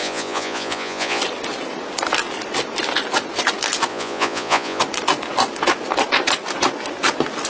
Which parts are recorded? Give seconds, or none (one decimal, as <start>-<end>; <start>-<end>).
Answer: 1.2-3.9; 4.8-7.5